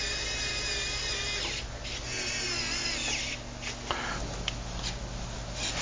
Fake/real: real